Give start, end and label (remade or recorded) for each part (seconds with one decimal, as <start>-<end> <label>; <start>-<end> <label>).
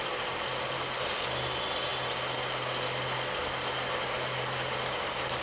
0.0-5.4 recorded